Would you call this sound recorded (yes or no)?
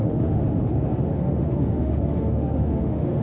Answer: no